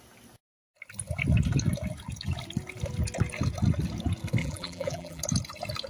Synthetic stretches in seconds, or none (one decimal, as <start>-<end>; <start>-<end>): 4.4-5.2